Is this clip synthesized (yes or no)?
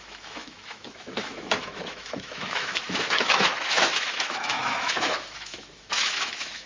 yes